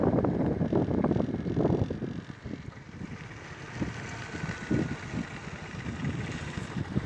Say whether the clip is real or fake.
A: real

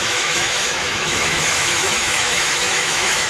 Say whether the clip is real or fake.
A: fake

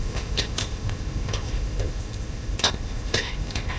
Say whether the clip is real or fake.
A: fake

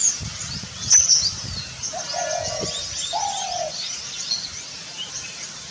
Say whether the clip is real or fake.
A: real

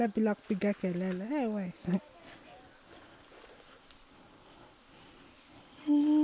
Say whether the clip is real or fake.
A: real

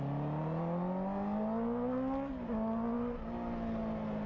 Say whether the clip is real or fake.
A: real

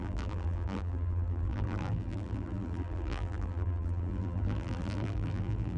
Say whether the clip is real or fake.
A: fake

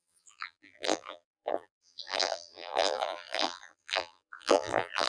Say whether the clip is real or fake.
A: fake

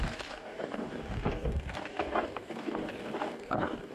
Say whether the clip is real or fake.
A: fake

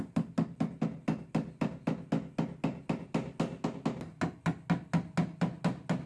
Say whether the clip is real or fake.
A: real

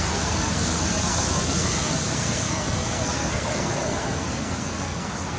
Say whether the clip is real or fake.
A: fake